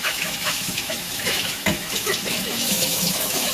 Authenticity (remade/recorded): remade